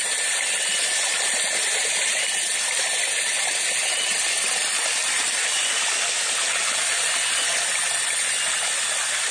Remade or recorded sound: recorded